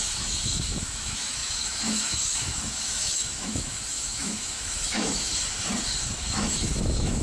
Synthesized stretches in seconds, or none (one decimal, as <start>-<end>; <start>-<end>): 0.0-5.3; 6.2-7.2